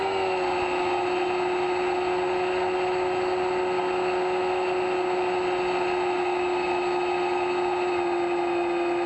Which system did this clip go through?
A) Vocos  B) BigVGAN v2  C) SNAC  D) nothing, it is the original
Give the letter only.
D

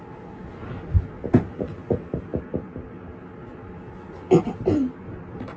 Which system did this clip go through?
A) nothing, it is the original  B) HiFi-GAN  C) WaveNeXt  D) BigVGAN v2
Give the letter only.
A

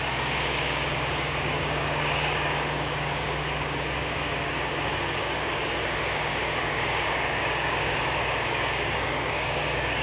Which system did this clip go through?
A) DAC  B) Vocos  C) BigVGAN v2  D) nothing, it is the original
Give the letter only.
A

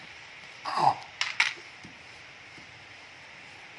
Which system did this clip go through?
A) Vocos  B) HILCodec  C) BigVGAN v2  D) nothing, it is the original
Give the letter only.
D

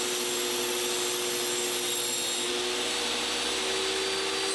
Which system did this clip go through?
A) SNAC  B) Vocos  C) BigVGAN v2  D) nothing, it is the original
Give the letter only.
D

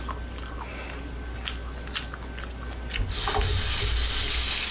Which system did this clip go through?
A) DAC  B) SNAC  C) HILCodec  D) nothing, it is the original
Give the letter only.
D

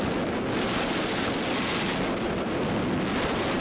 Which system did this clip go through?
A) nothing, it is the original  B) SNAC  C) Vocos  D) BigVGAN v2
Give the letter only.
A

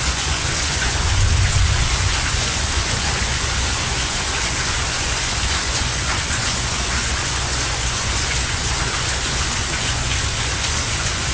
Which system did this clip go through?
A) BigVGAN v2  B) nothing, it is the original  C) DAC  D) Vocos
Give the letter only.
D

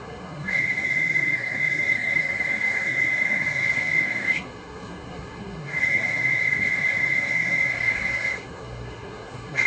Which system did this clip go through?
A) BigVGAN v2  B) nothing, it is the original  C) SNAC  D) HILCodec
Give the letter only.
C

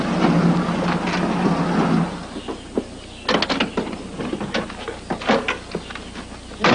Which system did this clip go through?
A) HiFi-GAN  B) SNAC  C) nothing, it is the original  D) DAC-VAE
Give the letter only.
C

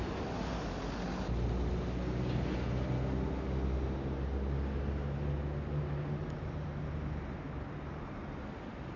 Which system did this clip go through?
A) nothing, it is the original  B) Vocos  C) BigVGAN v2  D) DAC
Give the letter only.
A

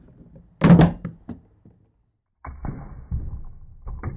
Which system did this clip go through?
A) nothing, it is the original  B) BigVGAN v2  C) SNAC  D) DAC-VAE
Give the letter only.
A